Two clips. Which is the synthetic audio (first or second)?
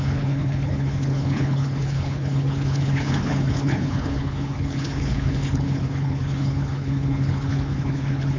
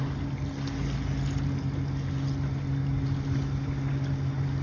first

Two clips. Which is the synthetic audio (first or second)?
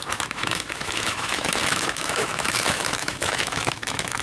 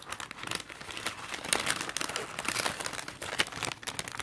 first